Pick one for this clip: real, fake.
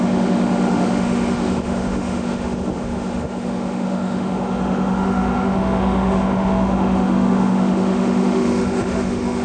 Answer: fake